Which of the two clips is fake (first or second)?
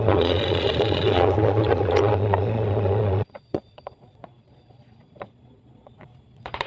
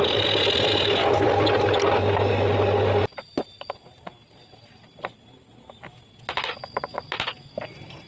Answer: first